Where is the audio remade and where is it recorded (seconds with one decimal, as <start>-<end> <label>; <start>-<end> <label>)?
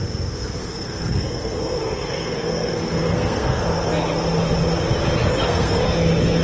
0.0-0.6 recorded; 0.6-3.6 remade; 3.6-5.3 recorded; 5.3-5.8 remade; 5.8-6.4 recorded